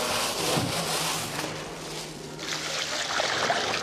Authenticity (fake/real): fake